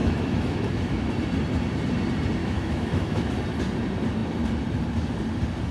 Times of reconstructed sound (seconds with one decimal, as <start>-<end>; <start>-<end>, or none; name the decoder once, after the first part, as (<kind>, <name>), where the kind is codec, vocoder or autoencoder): 0.0-1.1 (autoencoder, DAC-VAE); 2.4-3.3